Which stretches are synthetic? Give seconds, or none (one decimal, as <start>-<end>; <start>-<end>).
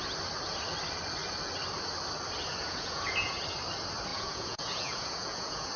2.6-3.4; 4.1-5.8